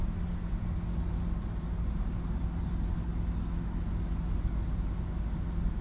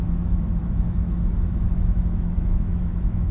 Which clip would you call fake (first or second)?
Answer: second